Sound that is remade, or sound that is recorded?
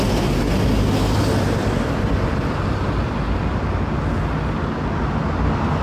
recorded